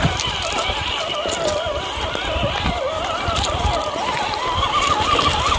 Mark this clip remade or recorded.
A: recorded